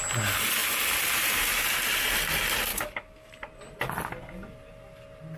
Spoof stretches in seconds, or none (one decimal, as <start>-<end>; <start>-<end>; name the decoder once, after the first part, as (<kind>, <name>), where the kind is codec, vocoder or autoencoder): 2.7-3.3 (codec, DAC)